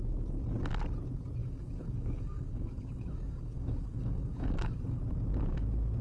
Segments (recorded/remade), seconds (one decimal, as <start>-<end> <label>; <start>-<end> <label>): 0.0-1.4 recorded; 1.4-5.0 remade; 5.0-6.0 recorded